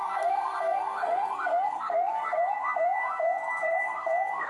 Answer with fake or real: fake